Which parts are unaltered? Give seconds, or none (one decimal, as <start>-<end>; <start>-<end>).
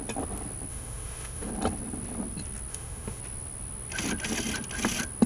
0.0-0.7; 1.5-2.7; 3.2-5.3